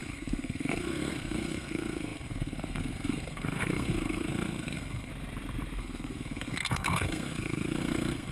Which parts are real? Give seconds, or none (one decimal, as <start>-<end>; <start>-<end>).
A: 5.1-5.8